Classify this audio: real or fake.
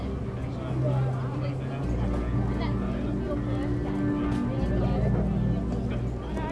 real